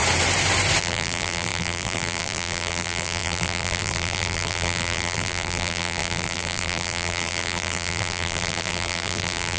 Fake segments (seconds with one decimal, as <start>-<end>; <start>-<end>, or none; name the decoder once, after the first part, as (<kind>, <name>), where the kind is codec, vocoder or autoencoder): 0.8-9.6 (vocoder, BigVGAN v2)